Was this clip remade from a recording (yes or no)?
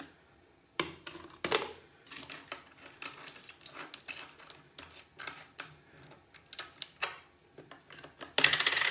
no